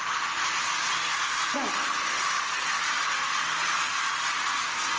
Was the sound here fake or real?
real